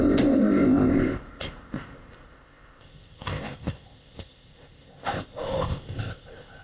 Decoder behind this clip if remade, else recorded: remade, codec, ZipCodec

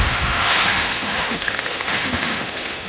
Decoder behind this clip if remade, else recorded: remade, autoencoder, DAC-VAE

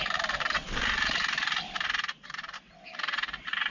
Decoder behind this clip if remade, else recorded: remade, vocoder, BigVGAN v2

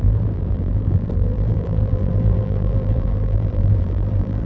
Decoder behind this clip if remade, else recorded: remade, vocoder, BigVGAN v2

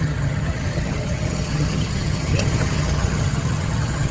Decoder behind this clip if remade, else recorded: remade, vocoder, HiFi-GAN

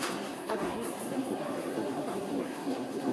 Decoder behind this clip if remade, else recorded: remade, codec, SNAC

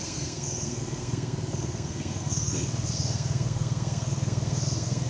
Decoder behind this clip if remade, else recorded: remade, codec, SNAC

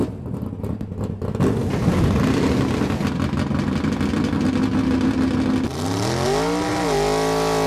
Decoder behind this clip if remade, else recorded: recorded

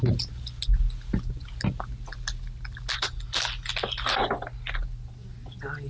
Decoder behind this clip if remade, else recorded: recorded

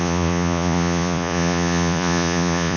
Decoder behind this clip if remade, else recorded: remade, vocoder, Vocos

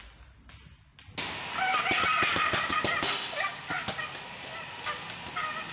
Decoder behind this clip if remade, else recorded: recorded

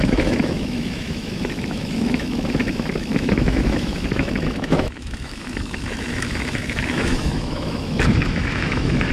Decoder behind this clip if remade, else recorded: remade, autoencoder, DAC-VAE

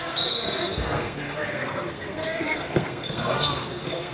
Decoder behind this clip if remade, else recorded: remade, codec, SNAC